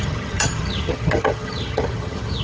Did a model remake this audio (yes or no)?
yes